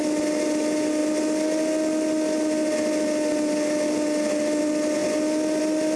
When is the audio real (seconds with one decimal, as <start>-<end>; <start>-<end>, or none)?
0.0-6.0